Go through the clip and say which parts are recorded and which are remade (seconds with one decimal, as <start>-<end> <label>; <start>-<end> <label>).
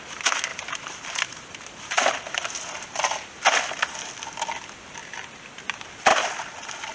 0.0-0.5 recorded; 0.5-3.3 remade; 3.3-5.0 recorded; 5.0-5.6 remade; 5.6-6.9 recorded